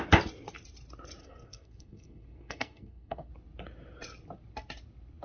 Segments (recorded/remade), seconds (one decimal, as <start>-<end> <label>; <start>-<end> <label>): 0.0-1.2 recorded; 1.2-3.3 remade; 3.3-5.2 recorded